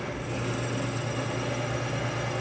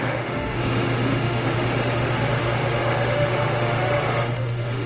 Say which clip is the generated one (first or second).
second